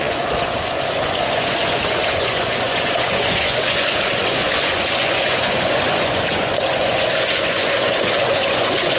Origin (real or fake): fake